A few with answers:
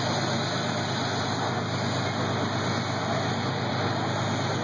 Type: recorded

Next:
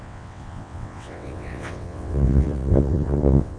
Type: remade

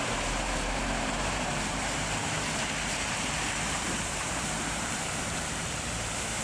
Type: remade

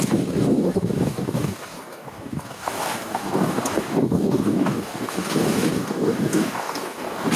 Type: remade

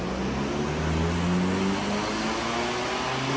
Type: recorded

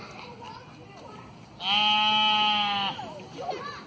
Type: recorded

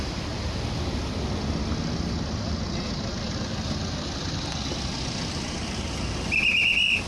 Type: recorded